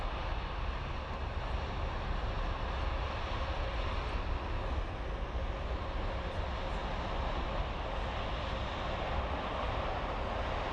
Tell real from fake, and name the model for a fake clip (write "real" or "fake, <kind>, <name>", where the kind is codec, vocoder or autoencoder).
real